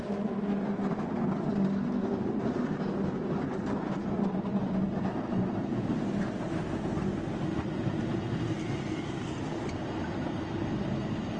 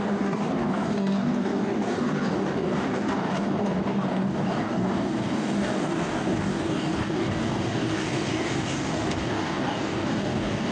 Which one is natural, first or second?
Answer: first